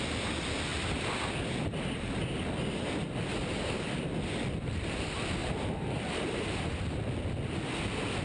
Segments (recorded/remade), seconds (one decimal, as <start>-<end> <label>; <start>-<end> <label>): 0.0-5.4 recorded; 5.4-7.0 remade; 7.0-8.2 recorded